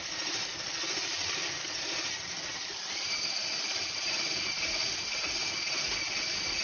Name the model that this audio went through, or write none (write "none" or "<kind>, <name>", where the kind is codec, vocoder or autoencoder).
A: none